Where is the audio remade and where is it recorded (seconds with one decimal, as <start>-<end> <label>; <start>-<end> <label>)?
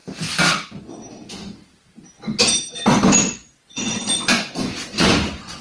0.0-3.2 recorded; 3.2-5.6 remade